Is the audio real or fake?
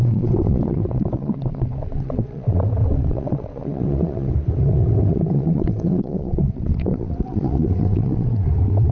fake